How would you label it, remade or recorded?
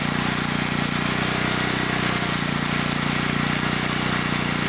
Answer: recorded